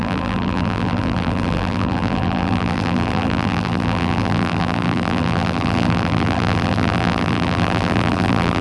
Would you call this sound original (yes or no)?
no